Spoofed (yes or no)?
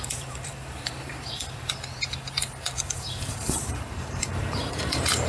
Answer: yes